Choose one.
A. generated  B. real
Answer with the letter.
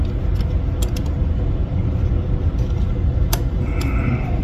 B